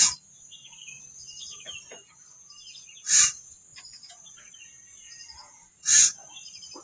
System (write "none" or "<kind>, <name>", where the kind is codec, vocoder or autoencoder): vocoder, Vocos